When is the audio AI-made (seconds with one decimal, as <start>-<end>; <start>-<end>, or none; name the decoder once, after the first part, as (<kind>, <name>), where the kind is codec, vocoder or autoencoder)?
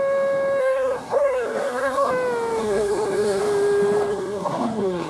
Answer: 0.6-2.1 (codec, SNAC); 2.6-3.4; 4.1-5.1